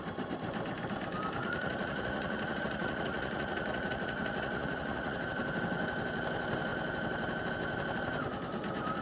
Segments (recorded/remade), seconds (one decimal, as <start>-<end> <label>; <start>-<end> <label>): 0.0-1.4 recorded; 1.4-5.2 remade; 5.2-9.0 recorded